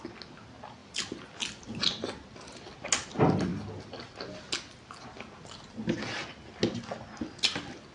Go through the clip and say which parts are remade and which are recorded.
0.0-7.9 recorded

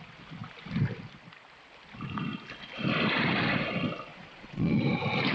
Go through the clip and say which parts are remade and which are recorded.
0.0-4.1 recorded; 4.1-4.8 remade; 4.8-5.3 recorded

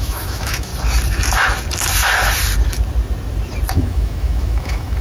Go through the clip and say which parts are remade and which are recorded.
0.0-0.7 remade; 0.7-3.7 recorded; 3.7-5.0 remade

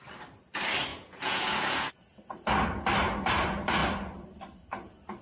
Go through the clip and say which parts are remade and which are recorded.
0.0-0.9 recorded; 0.9-2.2 remade; 2.2-5.2 recorded